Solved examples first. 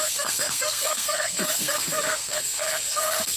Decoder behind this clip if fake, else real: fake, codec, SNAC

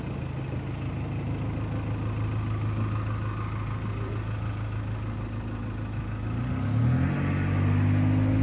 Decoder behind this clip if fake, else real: real